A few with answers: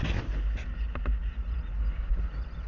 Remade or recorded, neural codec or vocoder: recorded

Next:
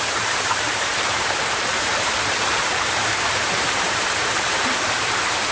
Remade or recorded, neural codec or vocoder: remade, vocoder, BigVGAN v2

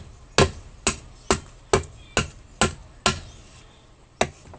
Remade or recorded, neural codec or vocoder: recorded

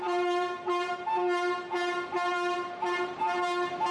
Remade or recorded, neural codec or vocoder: recorded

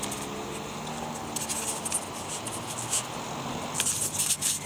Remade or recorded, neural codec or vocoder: recorded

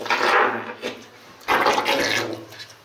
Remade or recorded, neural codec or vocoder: recorded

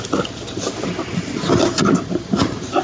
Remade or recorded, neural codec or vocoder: recorded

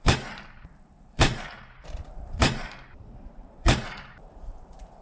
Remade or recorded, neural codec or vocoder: remade, vocoder, BigVGAN v2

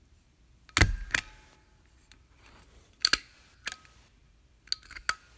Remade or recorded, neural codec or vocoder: recorded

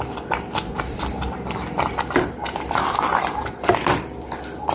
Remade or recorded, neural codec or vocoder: recorded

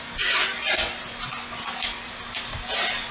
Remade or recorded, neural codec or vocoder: recorded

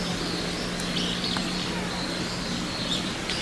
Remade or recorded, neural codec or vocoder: recorded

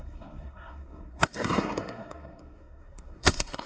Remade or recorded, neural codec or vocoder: remade, codec, SNAC